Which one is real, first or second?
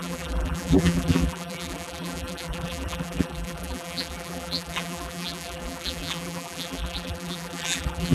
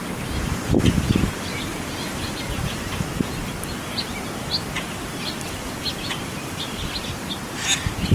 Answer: second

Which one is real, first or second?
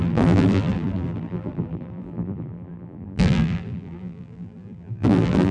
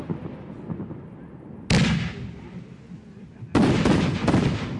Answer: second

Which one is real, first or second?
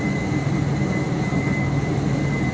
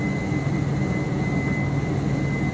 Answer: second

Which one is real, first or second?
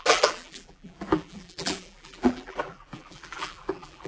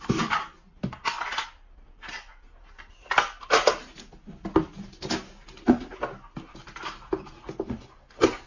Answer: second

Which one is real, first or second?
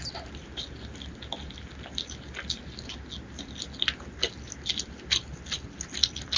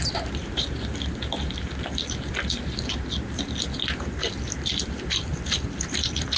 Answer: first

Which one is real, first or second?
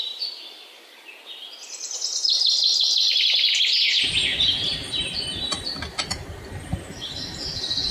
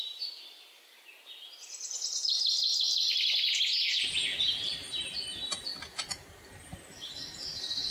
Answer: second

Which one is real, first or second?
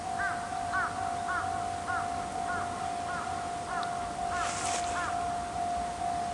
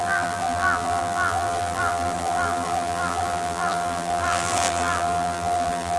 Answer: first